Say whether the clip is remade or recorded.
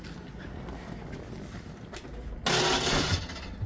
recorded